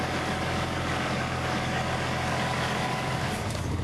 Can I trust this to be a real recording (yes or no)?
no